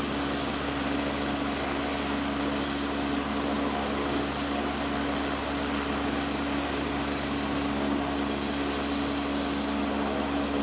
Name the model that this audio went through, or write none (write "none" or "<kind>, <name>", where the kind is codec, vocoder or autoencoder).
none